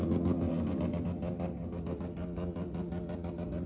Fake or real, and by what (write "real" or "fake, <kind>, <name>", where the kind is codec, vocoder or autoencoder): real